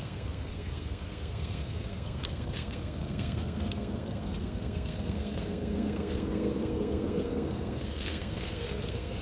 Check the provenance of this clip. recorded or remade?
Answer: remade